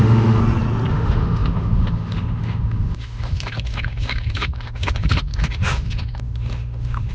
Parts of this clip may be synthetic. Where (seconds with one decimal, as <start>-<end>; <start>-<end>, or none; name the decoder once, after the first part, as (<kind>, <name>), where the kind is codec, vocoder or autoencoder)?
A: 0.0-0.4 (autoencoder, DAC-VAE); 0.9-7.1